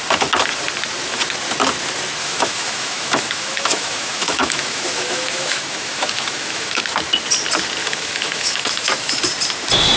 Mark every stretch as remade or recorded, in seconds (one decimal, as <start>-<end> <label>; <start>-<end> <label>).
0.0-2.2 recorded; 2.2-6.8 remade; 6.8-7.8 recorded; 7.8-9.2 remade; 9.2-10.0 recorded